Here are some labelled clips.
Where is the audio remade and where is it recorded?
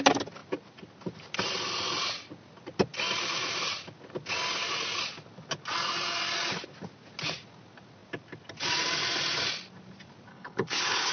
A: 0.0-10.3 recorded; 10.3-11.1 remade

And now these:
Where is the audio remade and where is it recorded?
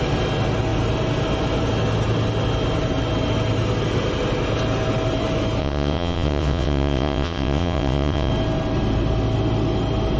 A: 0.0-5.6 recorded; 5.6-8.3 remade; 8.3-10.2 recorded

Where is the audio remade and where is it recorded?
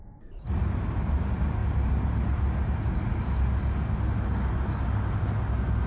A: 0.0-5.9 recorded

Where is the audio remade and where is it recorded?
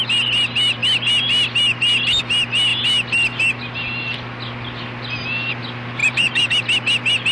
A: 0.0-6.0 recorded; 6.0-6.5 remade; 6.5-7.3 recorded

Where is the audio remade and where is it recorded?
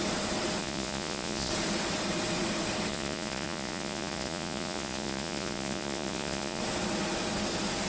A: 0.0-0.6 recorded; 0.6-1.5 remade; 1.5-2.9 recorded; 2.9-6.6 remade; 6.6-7.9 recorded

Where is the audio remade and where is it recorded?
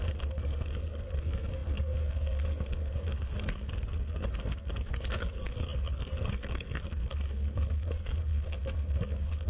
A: 0.0-9.5 remade